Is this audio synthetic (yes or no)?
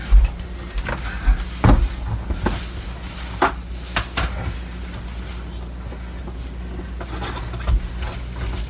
no